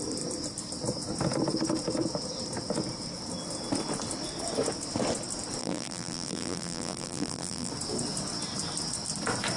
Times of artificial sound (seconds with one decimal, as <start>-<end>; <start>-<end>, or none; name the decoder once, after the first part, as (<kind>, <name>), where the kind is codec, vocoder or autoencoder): 5.6-7.7 (vocoder, BigVGAN v2)

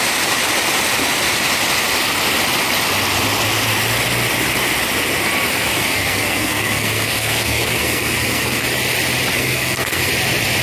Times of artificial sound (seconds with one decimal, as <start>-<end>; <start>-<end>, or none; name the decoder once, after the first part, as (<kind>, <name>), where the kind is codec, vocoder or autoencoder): 5.7-8.6 (codec, SNAC); 9.3-10.1

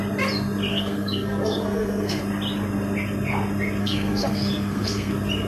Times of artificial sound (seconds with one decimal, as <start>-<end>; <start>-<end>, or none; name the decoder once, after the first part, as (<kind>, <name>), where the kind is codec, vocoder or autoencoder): 0.7-2.2 (codec, SNAC); 3.8-5.1

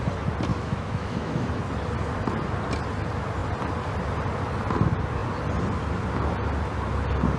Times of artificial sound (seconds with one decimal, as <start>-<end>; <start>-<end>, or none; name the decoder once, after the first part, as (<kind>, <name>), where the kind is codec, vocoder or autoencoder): 0.5-1.5 (autoencoder, DAC-VAE)

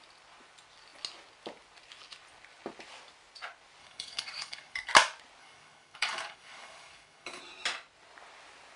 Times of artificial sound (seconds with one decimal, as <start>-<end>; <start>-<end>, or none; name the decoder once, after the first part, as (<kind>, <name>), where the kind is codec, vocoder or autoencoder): 3.8-4.9 (codec, DAC); 5.4-7.4

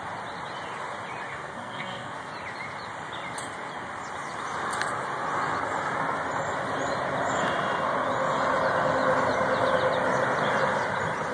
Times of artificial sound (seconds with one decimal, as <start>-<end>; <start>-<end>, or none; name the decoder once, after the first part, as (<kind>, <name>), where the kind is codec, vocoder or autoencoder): 1.3-2.3 (codec, SNAC)

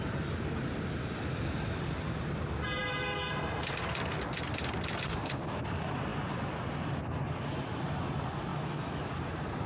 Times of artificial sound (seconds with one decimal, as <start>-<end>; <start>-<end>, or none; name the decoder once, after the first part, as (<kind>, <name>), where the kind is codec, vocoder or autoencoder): 8.5-9.0 (autoencoder, DAC-VAE)